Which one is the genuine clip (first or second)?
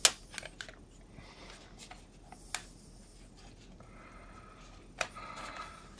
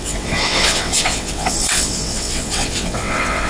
first